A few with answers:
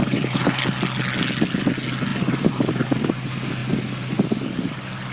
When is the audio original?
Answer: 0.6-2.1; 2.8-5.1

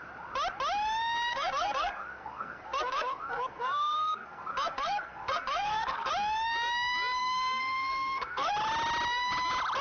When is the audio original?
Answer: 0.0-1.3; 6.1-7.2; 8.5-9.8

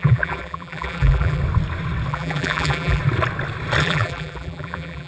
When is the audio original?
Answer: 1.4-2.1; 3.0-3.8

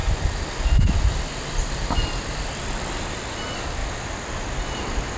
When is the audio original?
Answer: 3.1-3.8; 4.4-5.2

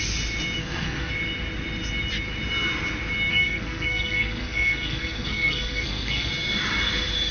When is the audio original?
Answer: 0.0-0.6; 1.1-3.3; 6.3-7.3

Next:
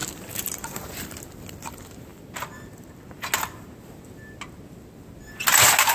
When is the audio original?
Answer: 0.0-5.9

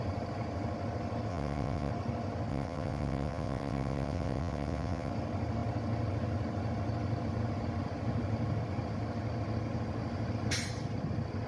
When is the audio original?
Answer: 0.0-1.3; 1.9-2.5; 5.1-11.5

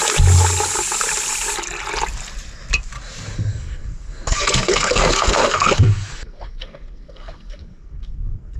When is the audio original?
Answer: 0.0-3.5